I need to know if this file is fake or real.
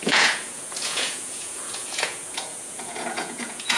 fake